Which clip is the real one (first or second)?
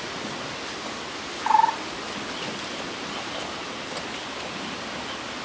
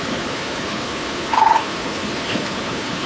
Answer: first